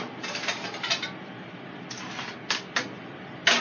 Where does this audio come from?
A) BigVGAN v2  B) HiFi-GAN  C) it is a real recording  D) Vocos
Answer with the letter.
C